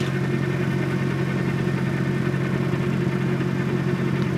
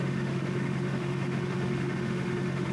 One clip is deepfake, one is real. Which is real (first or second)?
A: first